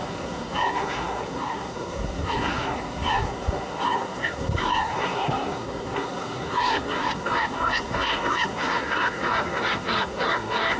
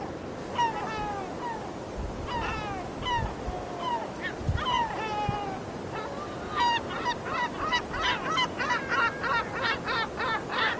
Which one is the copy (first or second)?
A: first